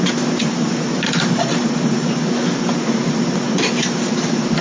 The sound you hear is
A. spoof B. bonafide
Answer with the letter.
B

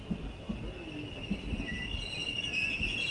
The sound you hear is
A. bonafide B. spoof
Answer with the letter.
A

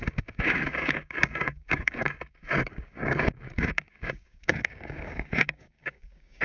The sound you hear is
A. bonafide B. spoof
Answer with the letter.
B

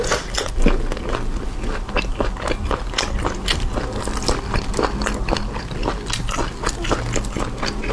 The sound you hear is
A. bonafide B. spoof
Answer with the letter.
A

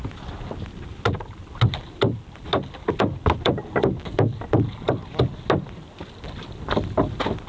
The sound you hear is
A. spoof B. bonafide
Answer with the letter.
B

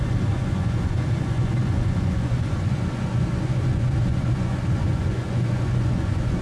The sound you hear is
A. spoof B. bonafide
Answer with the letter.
A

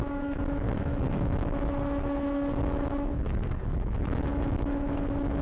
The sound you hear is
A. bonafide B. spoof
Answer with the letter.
B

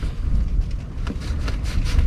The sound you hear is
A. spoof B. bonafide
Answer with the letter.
B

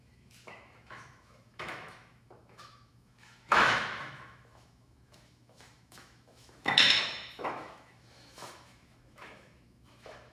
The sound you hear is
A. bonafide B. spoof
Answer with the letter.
B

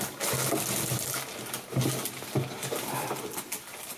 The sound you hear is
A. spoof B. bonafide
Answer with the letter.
B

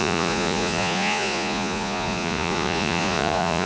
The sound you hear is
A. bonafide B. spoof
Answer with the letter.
B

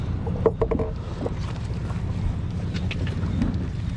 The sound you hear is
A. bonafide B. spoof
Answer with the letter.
A